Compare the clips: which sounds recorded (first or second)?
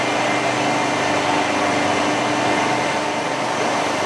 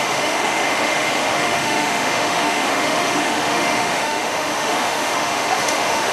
first